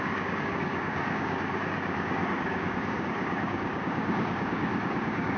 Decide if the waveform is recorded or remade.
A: remade